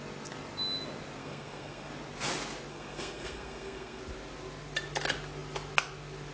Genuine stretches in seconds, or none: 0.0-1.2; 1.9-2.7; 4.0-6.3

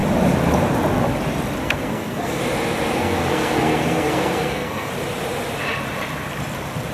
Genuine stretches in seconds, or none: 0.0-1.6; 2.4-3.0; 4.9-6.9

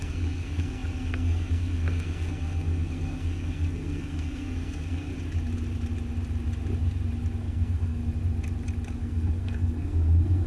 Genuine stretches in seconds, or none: 5.1-7.4; 8.0-9.0